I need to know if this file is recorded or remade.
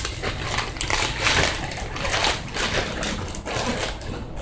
recorded